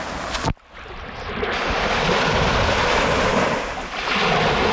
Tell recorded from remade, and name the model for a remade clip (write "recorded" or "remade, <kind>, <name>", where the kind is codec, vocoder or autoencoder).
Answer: recorded